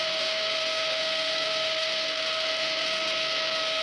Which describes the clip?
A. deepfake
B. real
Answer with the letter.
A